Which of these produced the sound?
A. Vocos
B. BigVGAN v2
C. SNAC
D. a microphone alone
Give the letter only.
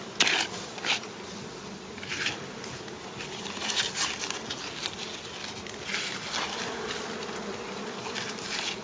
D